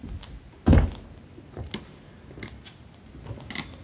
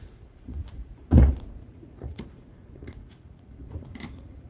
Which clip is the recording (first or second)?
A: first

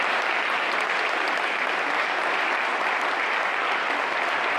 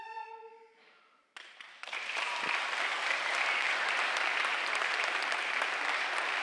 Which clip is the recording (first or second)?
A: first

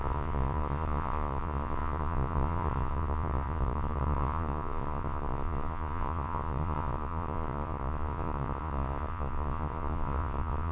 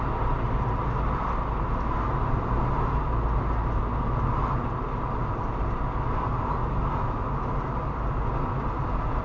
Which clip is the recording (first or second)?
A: second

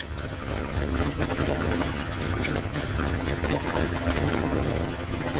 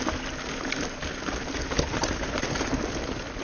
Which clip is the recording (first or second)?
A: second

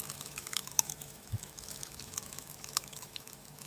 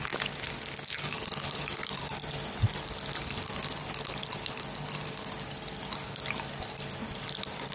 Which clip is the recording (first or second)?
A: second